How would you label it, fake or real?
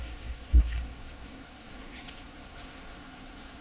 fake